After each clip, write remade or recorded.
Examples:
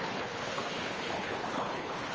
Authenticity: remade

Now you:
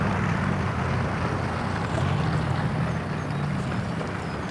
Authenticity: recorded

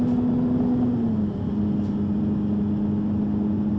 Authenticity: recorded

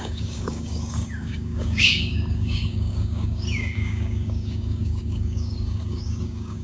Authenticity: remade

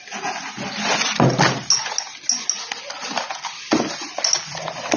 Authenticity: recorded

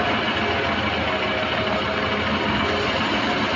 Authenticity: recorded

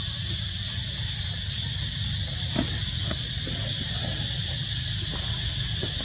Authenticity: recorded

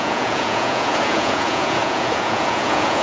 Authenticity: remade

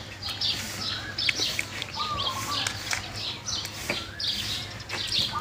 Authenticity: recorded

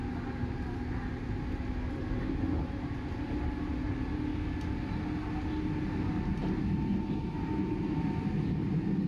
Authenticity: recorded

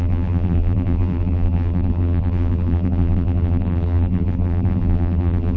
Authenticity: remade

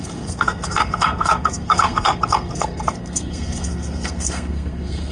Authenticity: remade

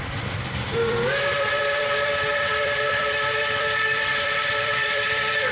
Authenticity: remade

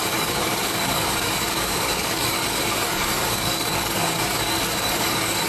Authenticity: remade